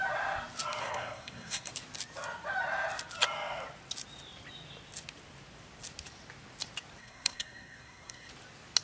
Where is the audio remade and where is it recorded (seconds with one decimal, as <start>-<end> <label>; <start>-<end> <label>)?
0.0-0.8 recorded; 0.8-1.7 remade; 1.7-7.0 recorded; 7.0-8.3 remade; 8.3-8.8 recorded